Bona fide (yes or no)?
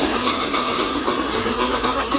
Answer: no